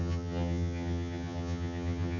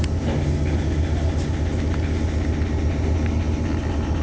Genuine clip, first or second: second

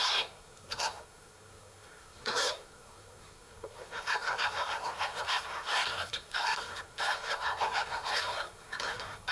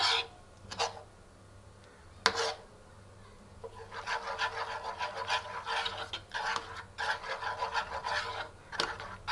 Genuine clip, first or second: second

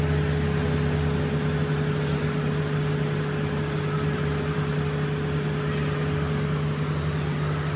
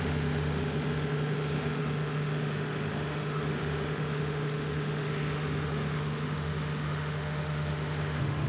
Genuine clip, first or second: first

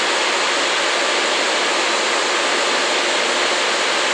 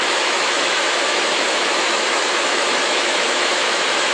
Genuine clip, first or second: first